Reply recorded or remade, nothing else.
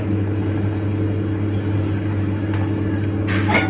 recorded